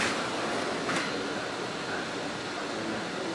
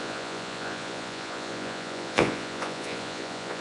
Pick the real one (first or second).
first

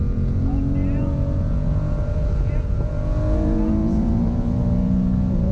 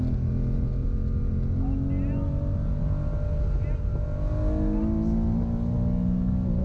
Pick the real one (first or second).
second